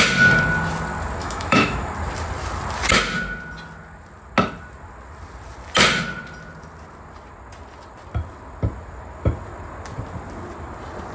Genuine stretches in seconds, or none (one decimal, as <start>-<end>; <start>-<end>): 0.0-1.2; 1.9-11.1